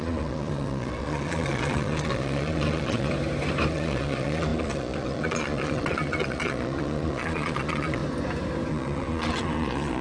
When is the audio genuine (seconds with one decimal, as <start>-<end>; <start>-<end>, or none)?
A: 3.1-3.7; 8.0-8.7